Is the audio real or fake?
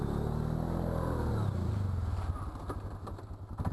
real